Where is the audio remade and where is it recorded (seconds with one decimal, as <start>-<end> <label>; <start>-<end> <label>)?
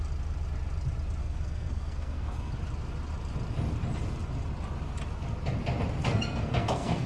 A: 0.0-1.2 recorded; 1.2-2.5 remade; 2.5-6.0 recorded; 6.0-7.1 remade